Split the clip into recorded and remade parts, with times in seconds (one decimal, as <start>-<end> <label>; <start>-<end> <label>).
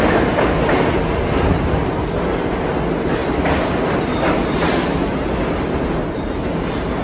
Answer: 0.0-7.0 recorded